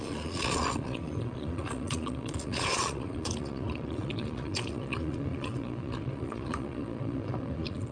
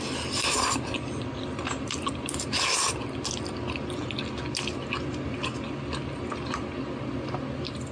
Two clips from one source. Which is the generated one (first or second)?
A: first